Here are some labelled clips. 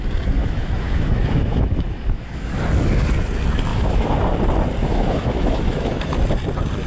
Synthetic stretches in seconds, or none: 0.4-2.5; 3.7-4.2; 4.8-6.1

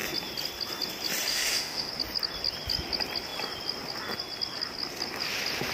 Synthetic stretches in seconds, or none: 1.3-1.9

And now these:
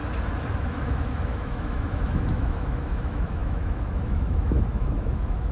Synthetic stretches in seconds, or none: 0.6-5.5

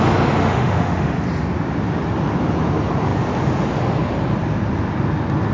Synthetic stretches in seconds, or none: 0.4-1.2

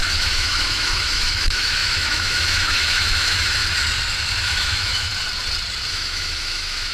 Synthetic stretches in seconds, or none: 0.0-3.6; 4.4-5.1; 5.9-6.9

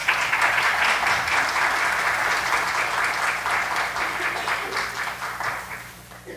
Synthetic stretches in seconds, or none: none